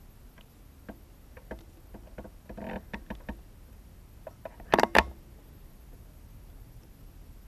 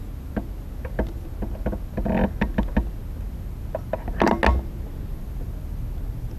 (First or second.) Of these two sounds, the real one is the second